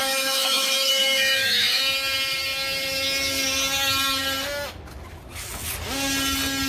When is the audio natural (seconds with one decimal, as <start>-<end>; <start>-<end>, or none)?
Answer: 1.8-6.7